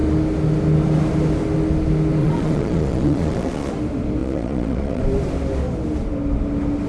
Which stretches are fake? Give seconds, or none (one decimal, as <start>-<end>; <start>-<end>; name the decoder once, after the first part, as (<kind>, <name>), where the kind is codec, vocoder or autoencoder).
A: 2.2-3.7 (vocoder, Vocos); 4.2-5.0